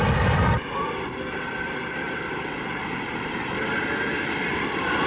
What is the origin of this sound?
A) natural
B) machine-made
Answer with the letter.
A